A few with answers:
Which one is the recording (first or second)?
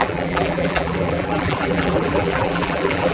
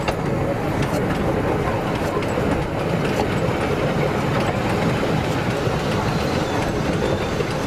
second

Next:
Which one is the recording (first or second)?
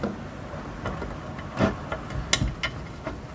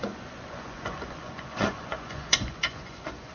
first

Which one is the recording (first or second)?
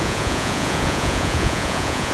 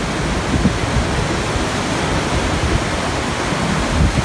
second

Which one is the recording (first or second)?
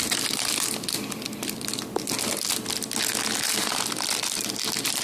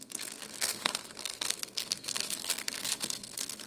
first